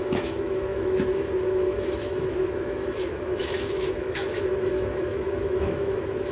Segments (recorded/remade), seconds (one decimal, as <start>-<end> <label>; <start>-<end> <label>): 0.0-6.3 remade